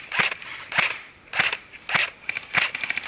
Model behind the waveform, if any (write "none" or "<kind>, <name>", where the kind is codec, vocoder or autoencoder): none